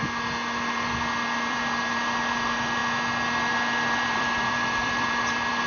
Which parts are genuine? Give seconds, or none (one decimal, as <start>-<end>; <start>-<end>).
0.0-0.6; 2.8-3.5